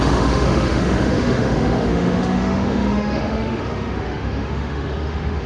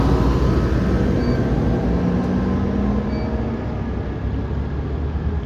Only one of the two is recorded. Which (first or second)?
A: second